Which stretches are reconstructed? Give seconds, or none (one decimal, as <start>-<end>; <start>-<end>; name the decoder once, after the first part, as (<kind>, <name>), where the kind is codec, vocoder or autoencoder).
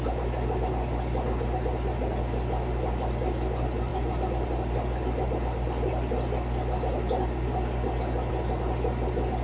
none